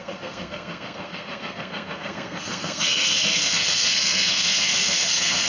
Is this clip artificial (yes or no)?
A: yes